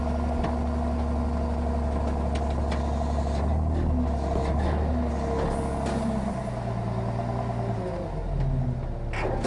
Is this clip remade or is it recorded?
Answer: recorded